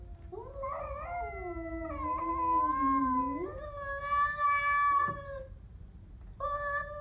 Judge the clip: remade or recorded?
recorded